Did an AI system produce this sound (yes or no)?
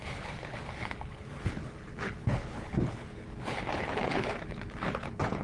yes